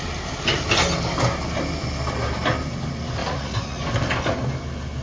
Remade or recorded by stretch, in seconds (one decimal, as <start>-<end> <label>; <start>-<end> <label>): 0.0-3.2 recorded; 3.2-3.8 remade; 3.8-5.0 recorded